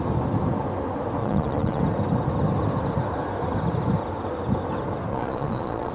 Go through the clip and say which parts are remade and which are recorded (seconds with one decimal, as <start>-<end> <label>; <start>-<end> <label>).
0.0-1.2 recorded; 1.2-1.8 remade; 1.8-5.1 recorded; 5.1-5.9 remade

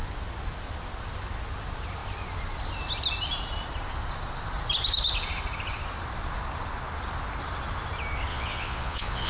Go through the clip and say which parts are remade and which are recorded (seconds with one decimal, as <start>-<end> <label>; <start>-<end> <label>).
0.0-8.3 recorded; 8.3-9.3 remade

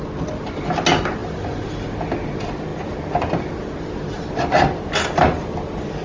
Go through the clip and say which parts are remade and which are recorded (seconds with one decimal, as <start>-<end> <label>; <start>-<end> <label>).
0.0-6.0 recorded